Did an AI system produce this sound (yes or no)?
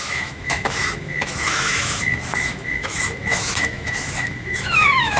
yes